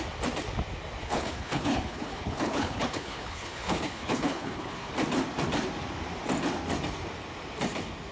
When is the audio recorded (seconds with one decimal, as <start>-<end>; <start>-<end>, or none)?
0.0-1.0; 4.9-8.1